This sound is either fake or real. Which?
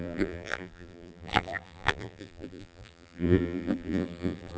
fake